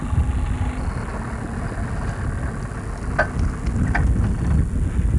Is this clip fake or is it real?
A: real